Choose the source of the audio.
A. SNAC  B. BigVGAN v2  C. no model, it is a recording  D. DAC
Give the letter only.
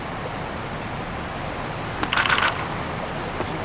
C